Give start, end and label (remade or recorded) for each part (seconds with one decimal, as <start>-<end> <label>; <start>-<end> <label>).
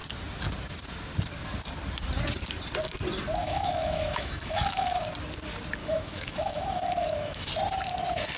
0.0-3.4 recorded; 3.4-5.0 remade; 5.0-5.8 recorded; 5.8-7.5 remade; 7.5-8.4 recorded